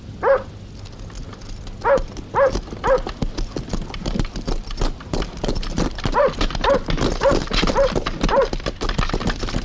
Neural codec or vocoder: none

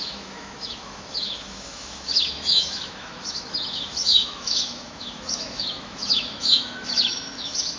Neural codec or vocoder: autoencoder, DAC-VAE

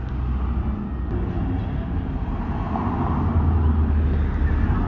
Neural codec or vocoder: none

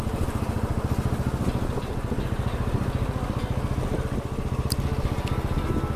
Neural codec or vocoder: none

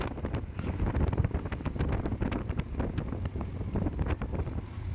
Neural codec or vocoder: none